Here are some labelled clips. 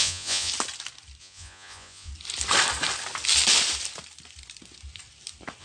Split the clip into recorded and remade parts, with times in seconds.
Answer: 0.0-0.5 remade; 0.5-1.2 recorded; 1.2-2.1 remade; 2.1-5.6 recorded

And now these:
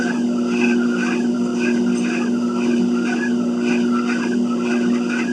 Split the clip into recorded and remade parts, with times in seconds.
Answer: 0.0-5.3 recorded

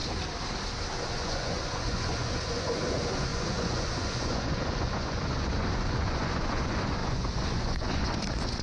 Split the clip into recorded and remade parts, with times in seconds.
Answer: 0.0-1.1 recorded; 1.1-8.6 remade

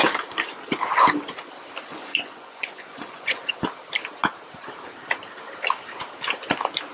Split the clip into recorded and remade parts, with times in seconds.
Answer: 0.0-1.9 recorded; 1.9-3.5 remade; 3.5-6.9 recorded

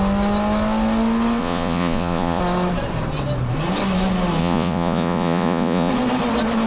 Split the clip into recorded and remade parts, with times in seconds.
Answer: 0.0-1.4 recorded; 1.4-2.4 remade; 2.4-4.4 recorded; 4.4-5.9 remade; 5.9-6.7 recorded

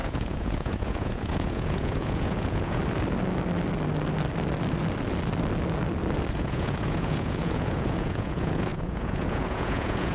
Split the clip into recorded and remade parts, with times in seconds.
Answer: 0.0-2.8 remade; 2.8-6.3 recorded; 6.3-10.1 remade